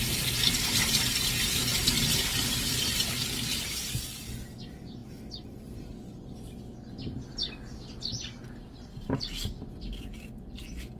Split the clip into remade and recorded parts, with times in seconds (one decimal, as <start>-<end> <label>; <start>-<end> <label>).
0.0-11.0 recorded